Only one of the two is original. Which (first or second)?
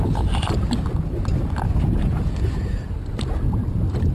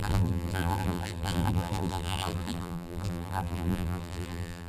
first